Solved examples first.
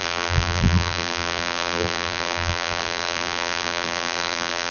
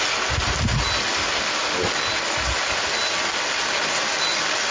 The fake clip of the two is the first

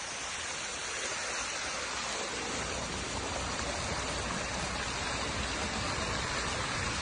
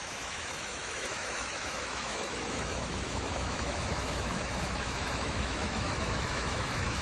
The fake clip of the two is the second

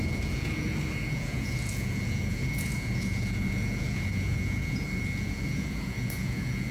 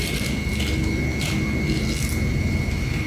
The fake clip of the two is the first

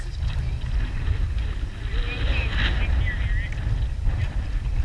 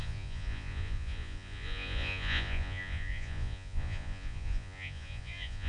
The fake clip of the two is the second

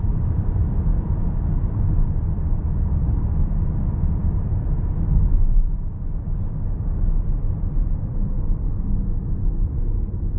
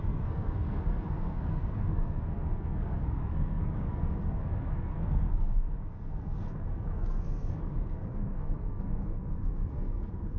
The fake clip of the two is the second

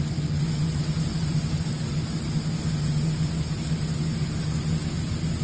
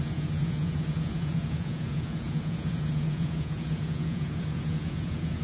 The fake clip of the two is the second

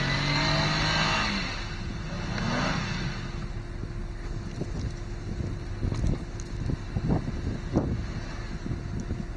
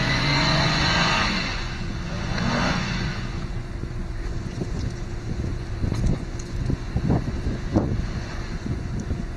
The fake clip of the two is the second